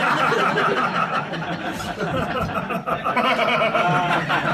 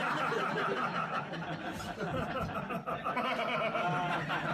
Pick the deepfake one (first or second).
first